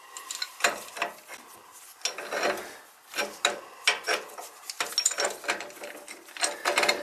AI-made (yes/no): no